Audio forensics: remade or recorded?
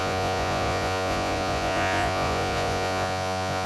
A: remade